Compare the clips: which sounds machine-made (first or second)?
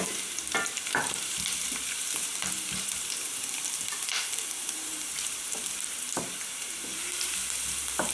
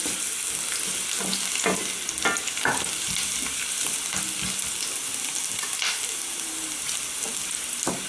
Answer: first